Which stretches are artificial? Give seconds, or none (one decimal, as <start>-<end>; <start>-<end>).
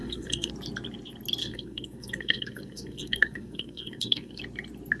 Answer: 0.0-0.5; 1.4-4.4